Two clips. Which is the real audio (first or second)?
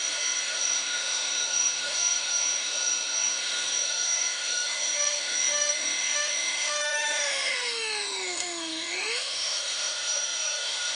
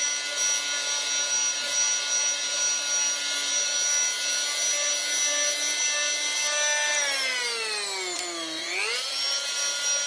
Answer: second